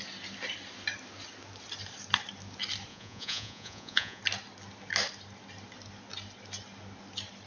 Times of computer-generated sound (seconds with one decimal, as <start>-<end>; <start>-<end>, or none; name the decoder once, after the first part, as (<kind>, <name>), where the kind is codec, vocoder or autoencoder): 2.9-4.2 (vocoder, Vocos)